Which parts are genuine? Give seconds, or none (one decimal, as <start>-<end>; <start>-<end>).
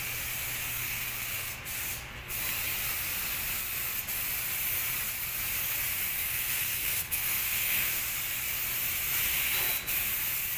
0.0-0.7; 1.6-6.3; 8.0-10.6